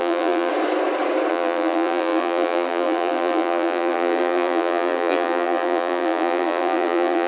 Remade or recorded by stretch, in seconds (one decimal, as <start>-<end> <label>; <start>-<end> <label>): 0.0-0.5 remade; 0.5-1.3 recorded; 1.3-7.3 remade